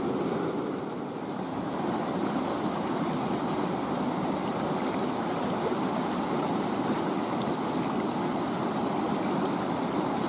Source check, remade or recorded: recorded